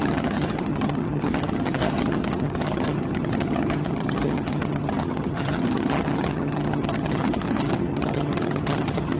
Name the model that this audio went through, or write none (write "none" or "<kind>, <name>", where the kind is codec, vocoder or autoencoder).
vocoder, HiFi-GAN